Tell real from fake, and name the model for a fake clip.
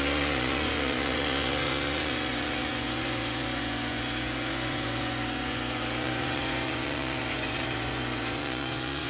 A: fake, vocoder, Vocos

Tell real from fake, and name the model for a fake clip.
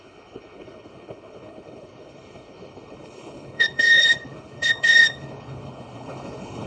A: fake, codec, HILCodec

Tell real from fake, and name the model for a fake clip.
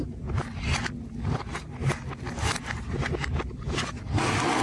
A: real